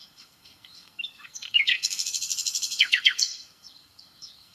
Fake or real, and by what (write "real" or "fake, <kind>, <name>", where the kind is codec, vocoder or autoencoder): fake, codec, SNAC